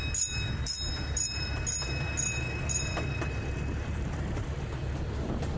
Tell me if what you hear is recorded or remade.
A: remade